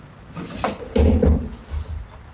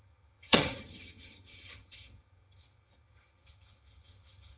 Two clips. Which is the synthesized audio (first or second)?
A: second